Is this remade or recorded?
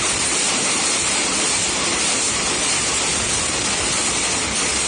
recorded